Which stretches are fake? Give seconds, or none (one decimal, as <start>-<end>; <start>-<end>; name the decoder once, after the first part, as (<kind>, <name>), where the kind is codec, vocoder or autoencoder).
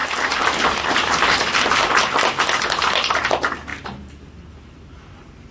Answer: none